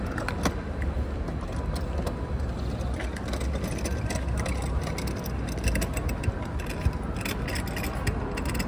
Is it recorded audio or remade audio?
recorded